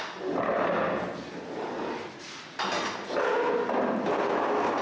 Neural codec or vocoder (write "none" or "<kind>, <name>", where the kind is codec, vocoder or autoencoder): none